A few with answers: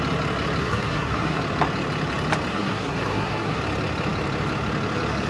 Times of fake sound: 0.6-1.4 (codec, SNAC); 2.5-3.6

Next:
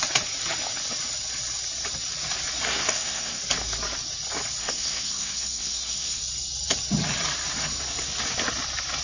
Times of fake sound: 2.7-3.4 (codec, SNAC); 4.6-6.2

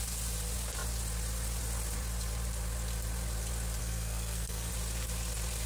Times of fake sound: 3.8-4.7 (codec, SNAC)

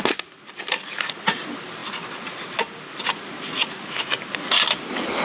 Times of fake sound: none

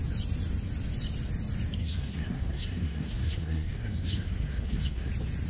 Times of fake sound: 1.8-5.1 (codec, SNAC)

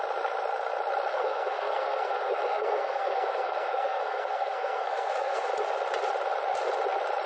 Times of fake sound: 1.1-5.5 (codec, SNAC)

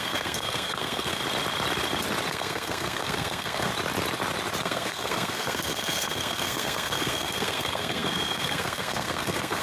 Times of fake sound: 0.0-1.2 (codec, SNAC); 2.3-3.7; 4.6-9.6

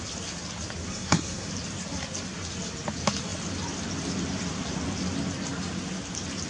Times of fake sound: 0.9-1.5 (codec, SNAC)